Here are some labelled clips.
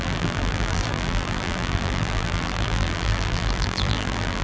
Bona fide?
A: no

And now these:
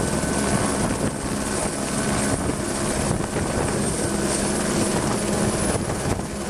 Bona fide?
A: yes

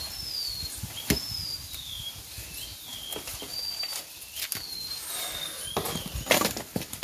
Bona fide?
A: yes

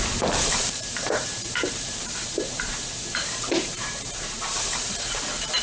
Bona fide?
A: no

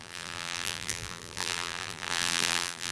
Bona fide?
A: no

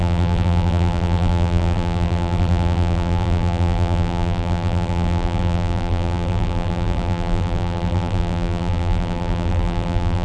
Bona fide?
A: no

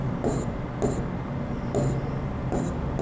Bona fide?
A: yes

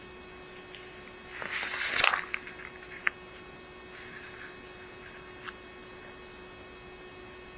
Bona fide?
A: yes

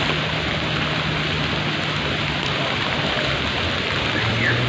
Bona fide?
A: yes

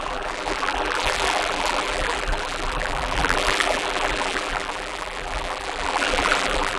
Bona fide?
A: no